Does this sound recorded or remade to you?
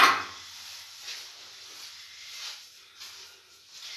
recorded